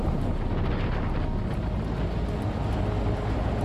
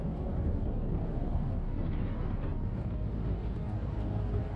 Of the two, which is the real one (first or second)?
first